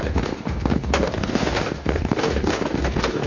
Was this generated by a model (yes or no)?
yes